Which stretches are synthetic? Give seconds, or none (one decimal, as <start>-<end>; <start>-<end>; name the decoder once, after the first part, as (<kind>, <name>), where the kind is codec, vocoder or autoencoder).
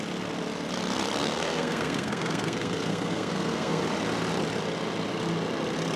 1.2-3.8 (codec, SNAC)